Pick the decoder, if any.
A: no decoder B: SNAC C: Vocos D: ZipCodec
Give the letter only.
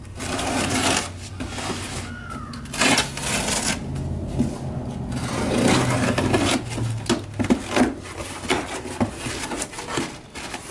A